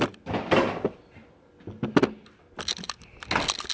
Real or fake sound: real